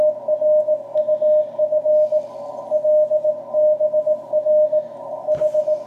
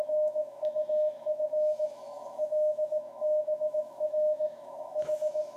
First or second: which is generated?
second